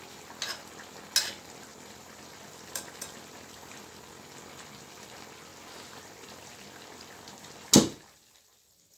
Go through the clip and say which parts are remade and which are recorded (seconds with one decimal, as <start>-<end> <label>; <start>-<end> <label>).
0.0-1.7 recorded; 1.7-3.8 remade; 3.8-9.0 recorded